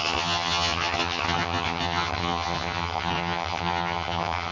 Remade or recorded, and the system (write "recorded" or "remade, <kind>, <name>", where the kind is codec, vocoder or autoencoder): remade, vocoder, HiFi-GAN